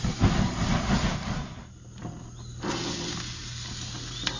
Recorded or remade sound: recorded